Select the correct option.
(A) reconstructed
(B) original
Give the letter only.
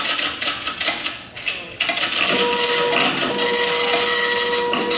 B